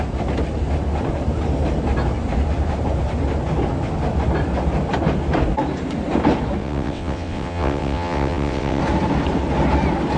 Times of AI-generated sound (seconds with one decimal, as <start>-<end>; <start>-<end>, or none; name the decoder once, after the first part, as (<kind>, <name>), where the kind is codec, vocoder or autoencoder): 6.6-8.8 (vocoder, WaveNeXt)

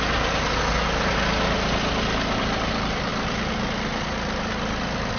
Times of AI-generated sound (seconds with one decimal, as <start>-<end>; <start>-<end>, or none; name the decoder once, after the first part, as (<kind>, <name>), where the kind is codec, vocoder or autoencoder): none